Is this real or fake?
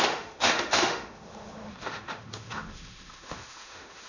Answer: fake